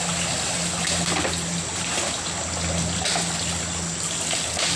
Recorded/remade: recorded